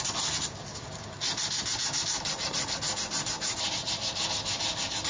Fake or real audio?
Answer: real